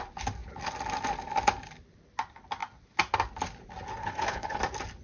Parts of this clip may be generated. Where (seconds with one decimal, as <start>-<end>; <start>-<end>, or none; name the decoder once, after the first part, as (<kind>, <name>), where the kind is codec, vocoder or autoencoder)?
4.0-4.6 (codec, HILCodec)